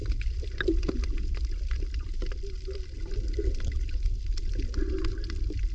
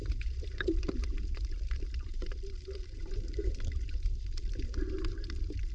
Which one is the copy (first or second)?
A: second